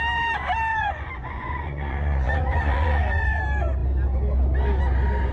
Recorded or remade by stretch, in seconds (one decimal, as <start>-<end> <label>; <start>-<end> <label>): 0.0-0.7 recorded; 0.7-3.4 remade; 3.4-5.3 recorded